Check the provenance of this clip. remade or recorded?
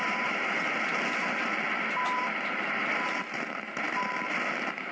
recorded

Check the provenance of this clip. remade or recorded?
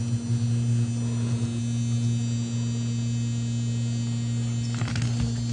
recorded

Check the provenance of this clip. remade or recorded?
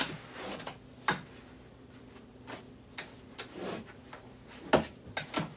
recorded